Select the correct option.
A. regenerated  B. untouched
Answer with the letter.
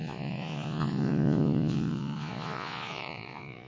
A